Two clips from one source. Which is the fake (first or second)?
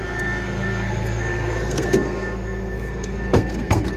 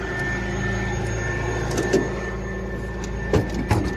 first